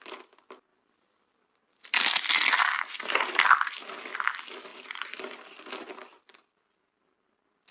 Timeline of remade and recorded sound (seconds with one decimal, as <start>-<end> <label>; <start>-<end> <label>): 0.0-0.7 recorded; 0.7-2.0 remade; 2.0-4.7 recorded; 4.7-6.6 remade; 6.6-7.7 recorded